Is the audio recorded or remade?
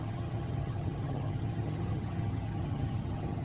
remade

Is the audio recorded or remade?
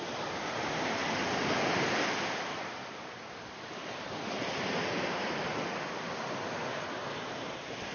recorded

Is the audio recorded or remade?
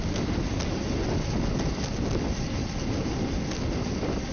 recorded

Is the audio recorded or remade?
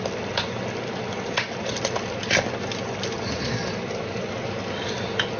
recorded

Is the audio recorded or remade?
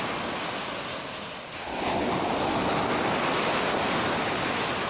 recorded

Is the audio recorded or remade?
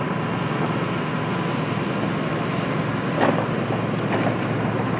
recorded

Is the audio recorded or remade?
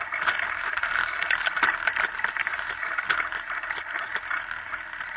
recorded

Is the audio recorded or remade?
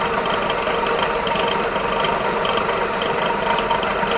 recorded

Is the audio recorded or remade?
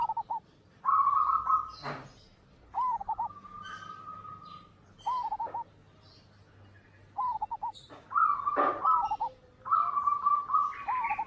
recorded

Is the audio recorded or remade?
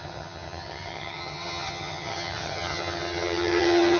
remade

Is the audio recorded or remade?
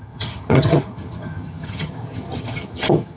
remade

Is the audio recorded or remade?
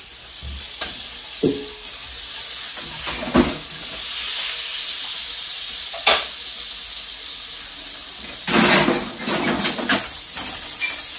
recorded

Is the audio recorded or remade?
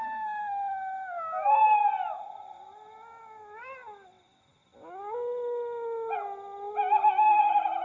recorded